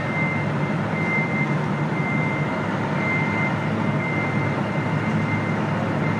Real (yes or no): yes